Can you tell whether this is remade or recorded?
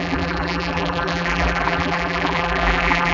remade